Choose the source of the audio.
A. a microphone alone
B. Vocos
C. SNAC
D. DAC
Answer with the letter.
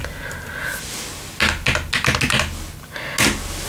A